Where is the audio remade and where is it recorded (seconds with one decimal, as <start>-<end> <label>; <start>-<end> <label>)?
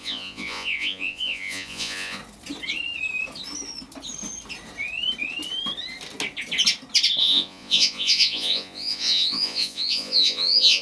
0.0-2.2 remade; 2.2-7.2 recorded; 7.2-10.8 remade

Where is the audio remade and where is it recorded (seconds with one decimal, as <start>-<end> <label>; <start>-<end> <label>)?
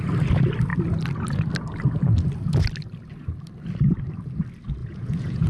0.0-4.8 recorded; 4.8-5.5 remade